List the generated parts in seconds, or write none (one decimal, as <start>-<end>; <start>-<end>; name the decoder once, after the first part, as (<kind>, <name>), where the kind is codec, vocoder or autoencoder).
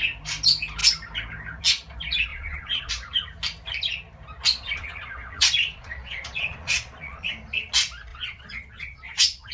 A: 2.3-2.9 (vocoder, Vocos); 4.5-7.3; 8.1-9.5